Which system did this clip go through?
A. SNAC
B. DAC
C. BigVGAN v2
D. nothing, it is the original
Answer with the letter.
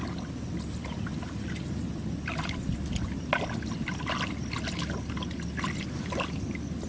D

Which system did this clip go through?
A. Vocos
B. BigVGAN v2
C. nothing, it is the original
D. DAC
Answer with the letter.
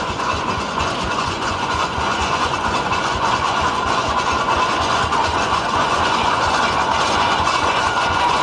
A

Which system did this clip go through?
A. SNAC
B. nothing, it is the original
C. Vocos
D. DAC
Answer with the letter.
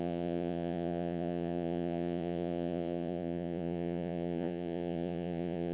C